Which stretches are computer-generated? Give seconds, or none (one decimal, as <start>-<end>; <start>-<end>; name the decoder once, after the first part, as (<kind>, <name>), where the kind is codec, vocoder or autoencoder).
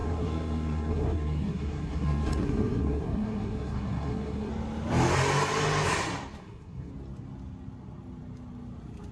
0.0-4.5 (codec, SNAC); 6.4-6.9